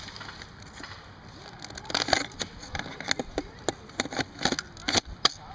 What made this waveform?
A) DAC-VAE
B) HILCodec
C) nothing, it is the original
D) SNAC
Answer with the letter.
C